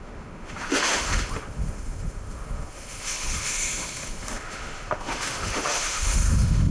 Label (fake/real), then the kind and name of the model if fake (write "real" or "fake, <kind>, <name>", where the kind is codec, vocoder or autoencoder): fake, autoencoder, DAC-VAE